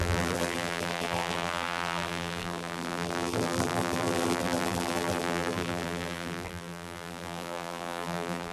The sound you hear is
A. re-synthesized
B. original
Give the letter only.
A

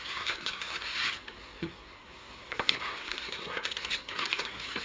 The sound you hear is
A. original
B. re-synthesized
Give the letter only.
B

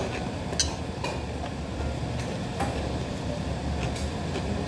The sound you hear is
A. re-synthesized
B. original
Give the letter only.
B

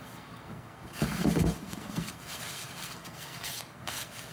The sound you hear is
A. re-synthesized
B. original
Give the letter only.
A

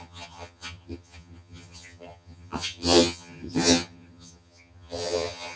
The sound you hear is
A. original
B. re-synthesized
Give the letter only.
B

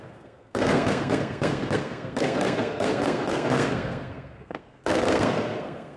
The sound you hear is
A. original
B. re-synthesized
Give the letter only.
B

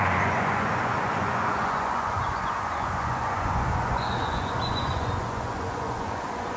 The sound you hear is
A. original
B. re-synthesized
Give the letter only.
B